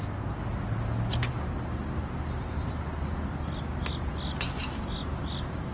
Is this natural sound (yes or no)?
yes